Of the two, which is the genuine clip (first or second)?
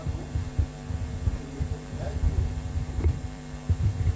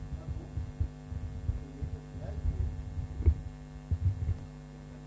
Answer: second